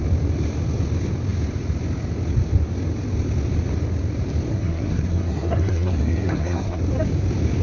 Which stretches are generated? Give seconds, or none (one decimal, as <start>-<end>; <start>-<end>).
4.5-6.8

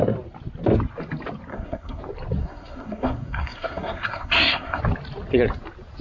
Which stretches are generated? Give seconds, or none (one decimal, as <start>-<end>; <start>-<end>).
1.5-2.0; 2.4-4.8

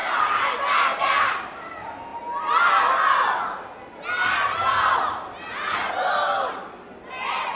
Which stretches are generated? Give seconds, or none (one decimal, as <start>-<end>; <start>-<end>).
none

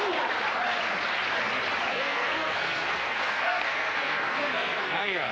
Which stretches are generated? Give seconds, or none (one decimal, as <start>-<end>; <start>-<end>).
1.9-5.3

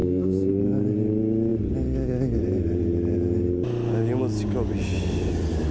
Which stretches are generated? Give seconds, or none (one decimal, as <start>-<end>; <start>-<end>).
0.0-0.6

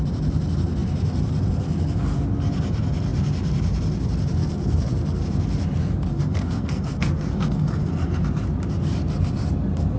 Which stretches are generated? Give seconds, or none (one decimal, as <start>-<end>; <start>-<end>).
4.4-5.2; 6.1-8.2

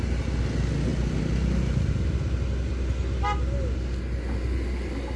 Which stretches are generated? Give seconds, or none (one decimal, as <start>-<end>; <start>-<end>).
none